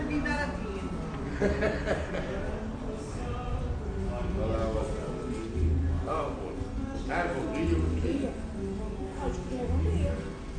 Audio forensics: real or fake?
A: real